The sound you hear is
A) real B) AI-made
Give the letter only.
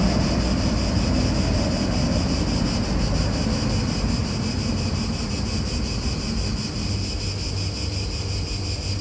A